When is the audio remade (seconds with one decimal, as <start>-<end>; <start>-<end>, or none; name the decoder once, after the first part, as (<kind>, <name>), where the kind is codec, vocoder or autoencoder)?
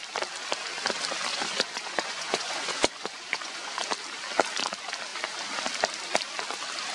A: 1.3-3.8 (vocoder, Vocos)